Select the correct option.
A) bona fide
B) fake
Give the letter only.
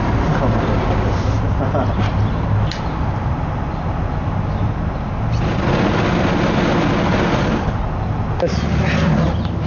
A